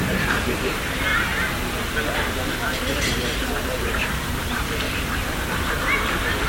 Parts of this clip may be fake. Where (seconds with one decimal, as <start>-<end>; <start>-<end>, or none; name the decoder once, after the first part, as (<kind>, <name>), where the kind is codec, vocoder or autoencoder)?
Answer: 0.0-1.1 (vocoder, BigVGAN v2); 3.6-6.5